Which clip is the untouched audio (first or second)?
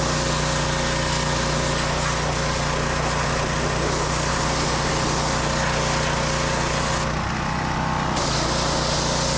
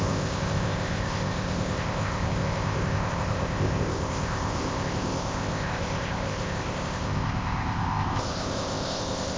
first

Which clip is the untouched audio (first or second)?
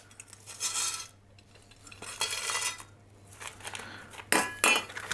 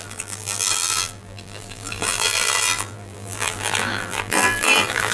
first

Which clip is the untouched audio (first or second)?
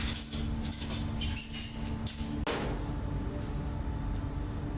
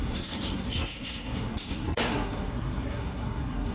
first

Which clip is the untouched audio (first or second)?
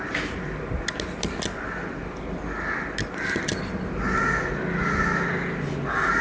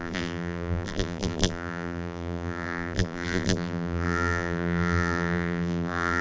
first